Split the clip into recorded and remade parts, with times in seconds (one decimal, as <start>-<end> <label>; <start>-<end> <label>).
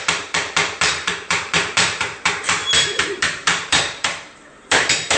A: 0.0-5.2 remade